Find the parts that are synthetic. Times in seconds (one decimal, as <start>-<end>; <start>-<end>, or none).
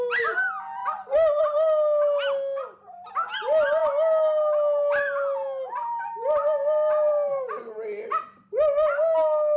none